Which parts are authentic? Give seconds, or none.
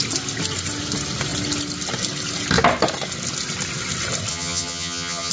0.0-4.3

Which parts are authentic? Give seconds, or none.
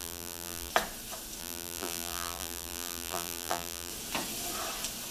0.7-1.4; 3.9-5.1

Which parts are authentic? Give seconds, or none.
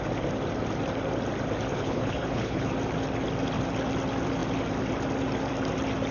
0.0-1.7; 2.7-6.1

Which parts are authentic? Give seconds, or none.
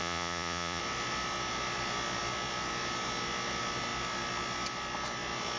0.8-5.6